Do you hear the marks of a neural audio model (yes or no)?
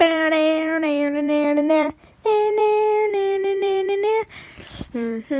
yes